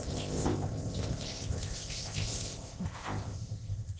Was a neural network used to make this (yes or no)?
yes